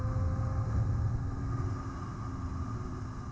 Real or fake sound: real